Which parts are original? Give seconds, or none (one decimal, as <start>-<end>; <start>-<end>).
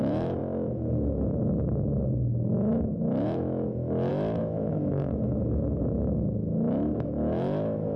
0.4-0.9